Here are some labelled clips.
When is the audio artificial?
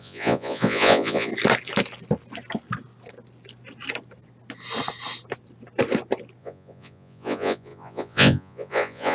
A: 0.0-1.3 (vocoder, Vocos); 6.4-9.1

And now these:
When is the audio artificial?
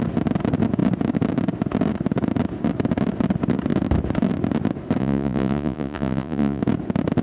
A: 5.0-6.6 (vocoder, Vocos)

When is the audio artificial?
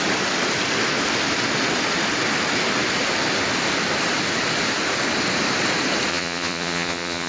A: 6.1-7.3 (vocoder, Vocos)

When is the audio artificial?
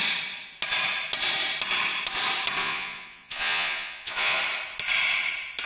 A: 2.6-4.4 (vocoder, Vocos)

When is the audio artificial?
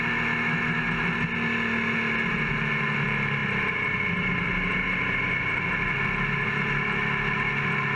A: none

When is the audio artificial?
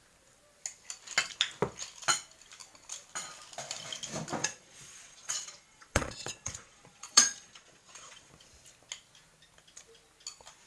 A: 4.4-8.3 (vocoder, Vocos)